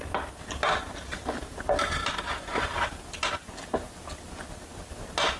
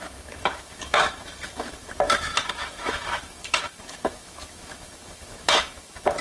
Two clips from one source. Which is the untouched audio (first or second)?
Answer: first